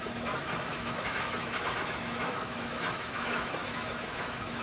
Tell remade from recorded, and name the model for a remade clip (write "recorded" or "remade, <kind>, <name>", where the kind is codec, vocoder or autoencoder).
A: remade, autoencoder, DAC-VAE